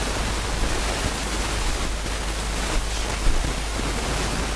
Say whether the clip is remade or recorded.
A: recorded